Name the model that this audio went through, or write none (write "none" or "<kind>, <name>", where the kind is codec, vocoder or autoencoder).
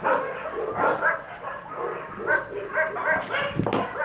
none